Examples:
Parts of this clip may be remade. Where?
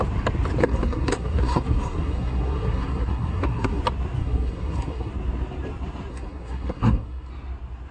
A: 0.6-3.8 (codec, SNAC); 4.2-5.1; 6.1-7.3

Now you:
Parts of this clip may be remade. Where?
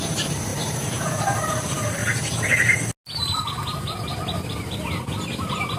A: 0.0-2.0 (vocoder, BigVGAN v2)